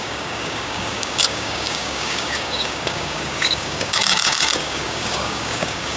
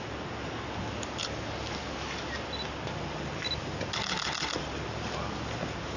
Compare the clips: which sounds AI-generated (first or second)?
first